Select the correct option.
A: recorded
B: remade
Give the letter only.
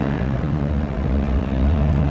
B